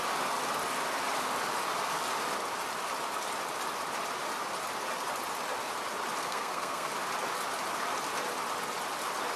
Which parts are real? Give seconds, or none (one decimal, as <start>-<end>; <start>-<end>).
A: 0.0-6.2; 6.9-9.4